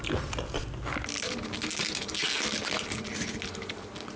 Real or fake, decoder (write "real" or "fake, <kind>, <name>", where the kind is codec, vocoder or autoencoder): real